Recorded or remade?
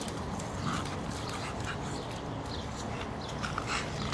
recorded